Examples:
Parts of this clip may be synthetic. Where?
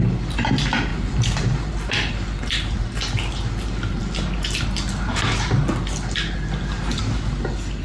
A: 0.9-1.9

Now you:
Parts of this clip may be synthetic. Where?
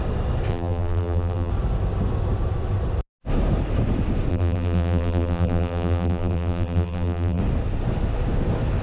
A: 0.5-1.5; 4.3-7.4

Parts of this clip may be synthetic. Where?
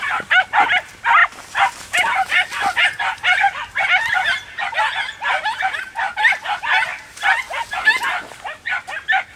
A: none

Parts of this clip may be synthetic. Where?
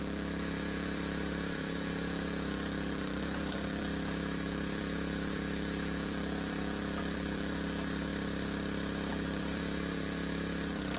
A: 0.0-8.1; 9.1-11.0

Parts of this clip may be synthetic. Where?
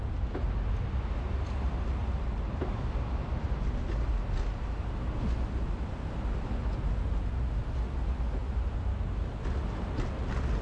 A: none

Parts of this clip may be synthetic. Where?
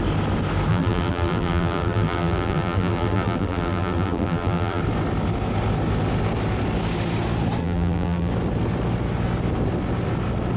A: 0.7-4.8; 7.6-8.3